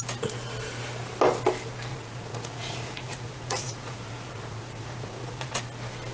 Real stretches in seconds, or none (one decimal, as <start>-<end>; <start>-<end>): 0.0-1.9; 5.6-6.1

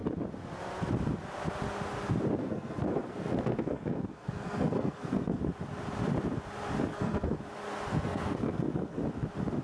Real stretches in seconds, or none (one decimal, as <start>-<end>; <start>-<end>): 0.0-2.4; 5.4-6.9; 7.4-7.9; 9.0-9.6

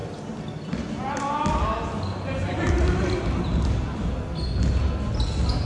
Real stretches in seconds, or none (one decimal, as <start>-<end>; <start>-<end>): 0.0-5.7

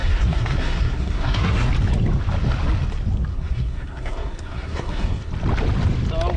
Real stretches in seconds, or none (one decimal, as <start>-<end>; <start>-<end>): 1.7-3.3; 5.3-6.4